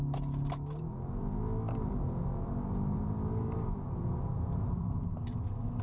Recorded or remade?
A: recorded